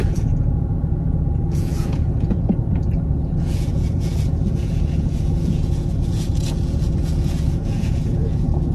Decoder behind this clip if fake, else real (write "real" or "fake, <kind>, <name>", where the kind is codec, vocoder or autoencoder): fake, vocoder, Vocos